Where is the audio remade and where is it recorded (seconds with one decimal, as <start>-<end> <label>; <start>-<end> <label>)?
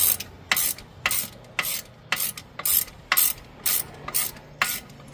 0.0-5.1 recorded